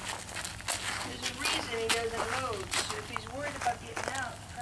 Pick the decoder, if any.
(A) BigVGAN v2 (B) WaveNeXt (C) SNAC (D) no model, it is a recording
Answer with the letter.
D